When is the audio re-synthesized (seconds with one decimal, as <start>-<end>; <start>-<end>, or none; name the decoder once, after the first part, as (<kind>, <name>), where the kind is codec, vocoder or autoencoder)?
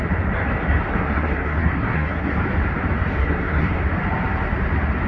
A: 0.9-2.3 (codec, SNAC); 3.2-3.8